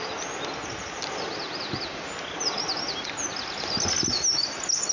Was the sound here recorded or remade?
recorded